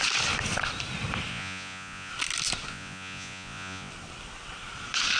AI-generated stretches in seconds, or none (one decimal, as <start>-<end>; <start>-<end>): 1.3-2.1; 2.7-3.9